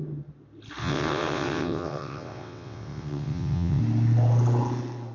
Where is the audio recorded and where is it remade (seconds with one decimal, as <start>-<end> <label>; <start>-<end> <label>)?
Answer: 0.0-0.8 recorded; 0.8-3.8 remade; 3.8-5.1 recorded